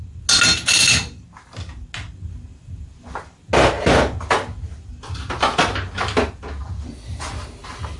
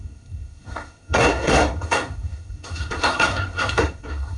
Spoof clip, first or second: second